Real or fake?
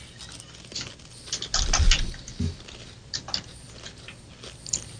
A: real